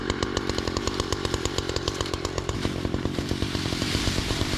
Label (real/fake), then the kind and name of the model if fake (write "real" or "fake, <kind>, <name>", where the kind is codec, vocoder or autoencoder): fake, vocoder, BigVGAN v2